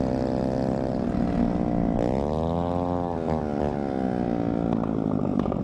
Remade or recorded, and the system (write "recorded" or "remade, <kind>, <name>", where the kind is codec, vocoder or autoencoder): recorded